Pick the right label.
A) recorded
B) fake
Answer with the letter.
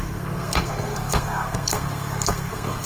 B